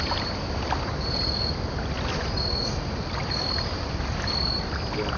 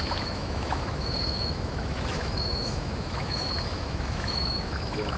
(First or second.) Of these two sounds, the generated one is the second